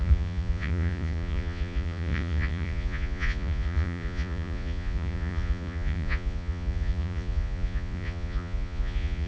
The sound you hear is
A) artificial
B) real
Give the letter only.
A